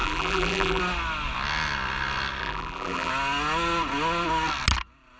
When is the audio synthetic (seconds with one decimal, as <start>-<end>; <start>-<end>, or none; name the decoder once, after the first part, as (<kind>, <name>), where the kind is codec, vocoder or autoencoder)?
0.0-0.8 (vocoder, BigVGAN v2); 2.4-3.1